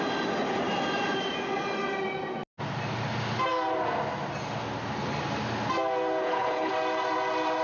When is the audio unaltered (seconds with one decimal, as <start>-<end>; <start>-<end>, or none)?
0.0-6.2; 6.7-7.6